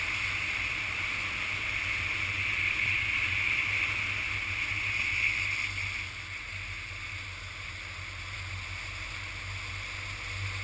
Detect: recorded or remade recorded